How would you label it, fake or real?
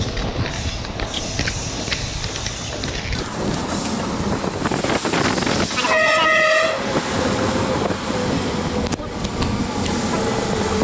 real